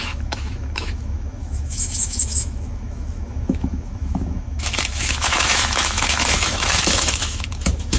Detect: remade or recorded remade